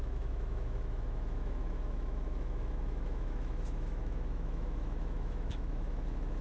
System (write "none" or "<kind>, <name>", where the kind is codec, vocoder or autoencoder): autoencoder, DAC-VAE